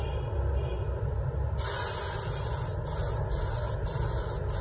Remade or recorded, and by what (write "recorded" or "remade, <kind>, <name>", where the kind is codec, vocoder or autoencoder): recorded